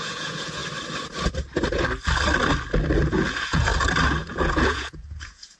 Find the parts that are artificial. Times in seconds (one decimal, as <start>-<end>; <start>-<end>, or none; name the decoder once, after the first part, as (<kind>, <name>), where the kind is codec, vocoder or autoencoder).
0.0-0.6 (vocoder, Vocos); 3.1-3.7; 4.2-5.6